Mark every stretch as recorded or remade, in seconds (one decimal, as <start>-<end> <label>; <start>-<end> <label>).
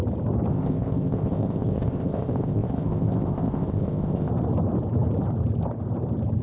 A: 0.0-0.5 recorded; 0.5-4.3 remade; 4.3-6.4 recorded